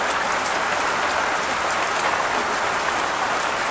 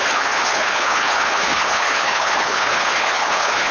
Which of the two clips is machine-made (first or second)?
second